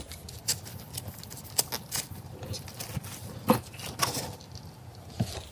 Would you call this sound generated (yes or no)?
no